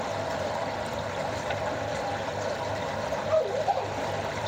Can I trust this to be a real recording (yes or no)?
no